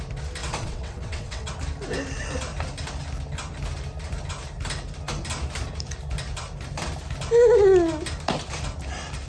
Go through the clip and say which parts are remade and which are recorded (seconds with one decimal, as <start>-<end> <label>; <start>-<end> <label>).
0.0-0.4 recorded; 0.4-1.5 remade; 1.5-9.3 recorded